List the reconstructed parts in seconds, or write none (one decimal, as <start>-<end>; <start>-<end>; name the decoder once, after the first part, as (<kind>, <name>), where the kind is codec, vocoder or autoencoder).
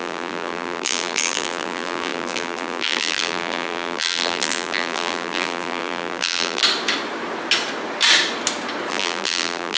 0.0-6.6 (vocoder, BigVGAN v2); 8.9-9.8